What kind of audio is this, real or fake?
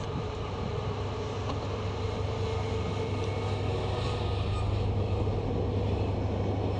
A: real